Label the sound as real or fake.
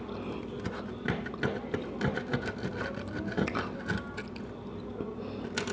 real